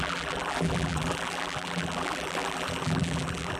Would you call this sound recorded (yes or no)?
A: no